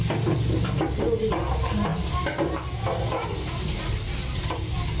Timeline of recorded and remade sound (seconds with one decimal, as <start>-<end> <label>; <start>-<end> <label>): 0.0-5.0 recorded